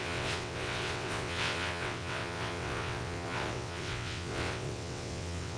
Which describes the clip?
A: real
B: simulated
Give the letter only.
B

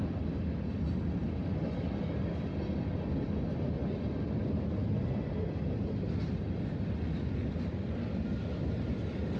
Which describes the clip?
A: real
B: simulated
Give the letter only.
A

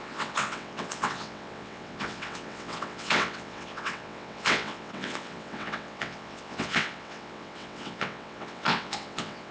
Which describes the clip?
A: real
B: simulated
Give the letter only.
B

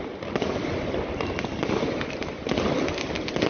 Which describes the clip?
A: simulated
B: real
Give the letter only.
B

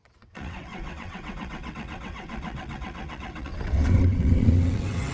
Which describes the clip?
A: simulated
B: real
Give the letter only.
A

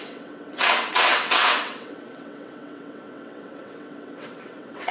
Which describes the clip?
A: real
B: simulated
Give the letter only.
B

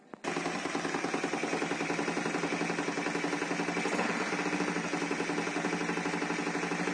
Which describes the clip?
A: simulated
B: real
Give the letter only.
B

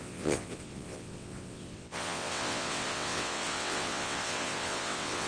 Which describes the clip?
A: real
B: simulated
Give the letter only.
B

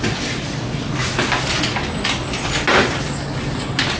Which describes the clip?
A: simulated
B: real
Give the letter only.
B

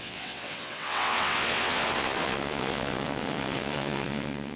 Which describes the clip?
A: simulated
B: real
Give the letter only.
A